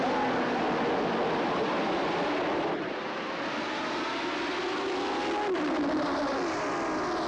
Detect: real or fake real